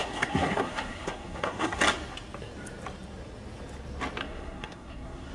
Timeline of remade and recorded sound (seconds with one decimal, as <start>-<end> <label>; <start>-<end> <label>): 0.0-1.8 remade; 1.8-4.2 recorded; 4.2-5.3 remade